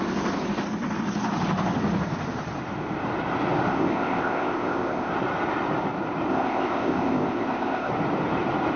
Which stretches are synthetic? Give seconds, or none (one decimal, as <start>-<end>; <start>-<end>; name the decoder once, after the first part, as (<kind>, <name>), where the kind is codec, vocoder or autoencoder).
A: 3.7-5.1 (codec, ZipCodec); 6.3-7.9